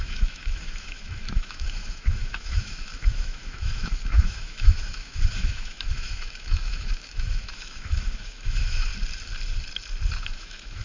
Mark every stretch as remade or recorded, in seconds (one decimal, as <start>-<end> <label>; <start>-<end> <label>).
0.0-8.9 remade; 8.9-10.2 recorded; 10.2-10.8 remade